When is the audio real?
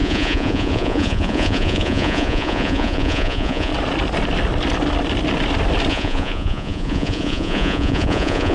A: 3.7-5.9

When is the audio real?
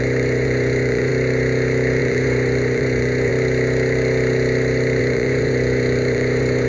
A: 1.1-2.0; 3.3-5.0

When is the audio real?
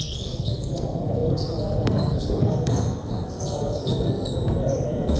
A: none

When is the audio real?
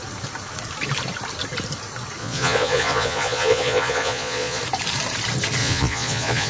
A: 0.0-2.2; 4.6-5.6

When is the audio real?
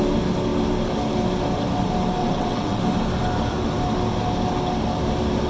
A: 0.0-2.2; 2.8-5.5